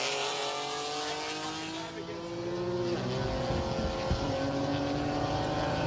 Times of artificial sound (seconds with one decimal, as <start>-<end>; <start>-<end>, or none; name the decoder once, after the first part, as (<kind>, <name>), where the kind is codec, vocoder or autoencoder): 0.0-0.4 (vocoder, BigVGAN v2); 3.9-5.9